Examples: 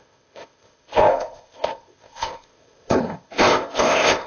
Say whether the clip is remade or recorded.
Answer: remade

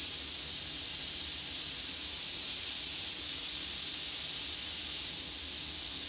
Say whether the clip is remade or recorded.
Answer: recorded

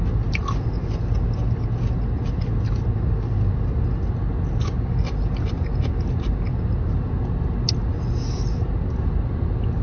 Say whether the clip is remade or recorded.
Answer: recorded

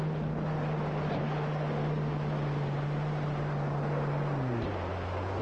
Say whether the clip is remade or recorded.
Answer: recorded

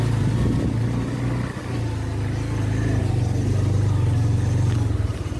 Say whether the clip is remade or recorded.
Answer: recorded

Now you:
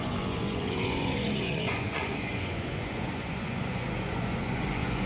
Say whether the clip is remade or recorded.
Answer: remade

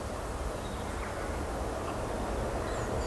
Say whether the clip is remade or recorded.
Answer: recorded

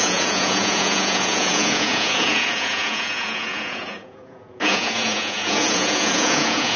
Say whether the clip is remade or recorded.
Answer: remade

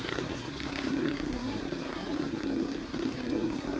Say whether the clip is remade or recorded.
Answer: remade